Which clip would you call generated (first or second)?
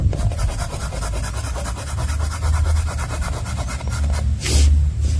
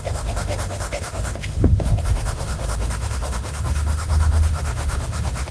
second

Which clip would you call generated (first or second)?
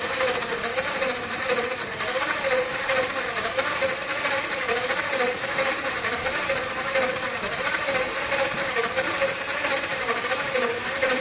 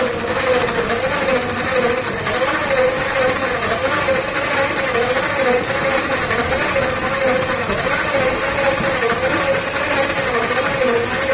first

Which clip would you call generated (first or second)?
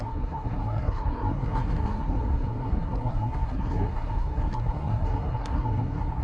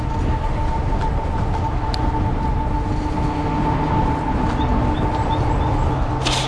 first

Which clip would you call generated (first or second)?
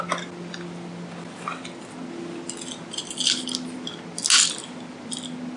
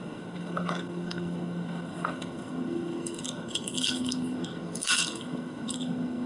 second